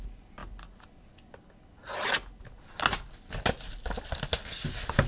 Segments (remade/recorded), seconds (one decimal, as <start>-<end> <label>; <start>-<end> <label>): 0.0-5.1 recorded